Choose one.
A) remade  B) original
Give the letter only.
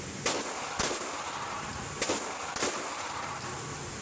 B